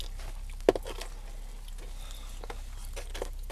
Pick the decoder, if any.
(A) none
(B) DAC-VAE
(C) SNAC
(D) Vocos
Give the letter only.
A